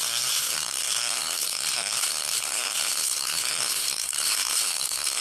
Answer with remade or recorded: remade